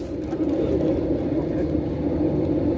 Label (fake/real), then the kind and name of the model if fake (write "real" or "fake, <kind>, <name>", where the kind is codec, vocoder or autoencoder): real